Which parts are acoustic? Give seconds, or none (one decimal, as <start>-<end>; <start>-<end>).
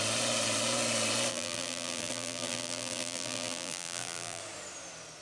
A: 0.0-1.3; 4.4-5.2